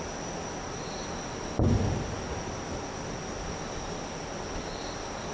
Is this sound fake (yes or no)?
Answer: no